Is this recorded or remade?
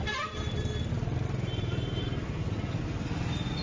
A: recorded